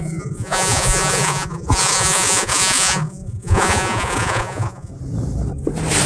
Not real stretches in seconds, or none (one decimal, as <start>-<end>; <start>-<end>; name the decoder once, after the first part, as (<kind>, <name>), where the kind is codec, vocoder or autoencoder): 0.0-4.9 (vocoder, Vocos)